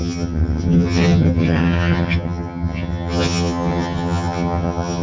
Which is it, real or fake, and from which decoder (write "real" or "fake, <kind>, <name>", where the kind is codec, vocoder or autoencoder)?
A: fake, vocoder, HiFi-GAN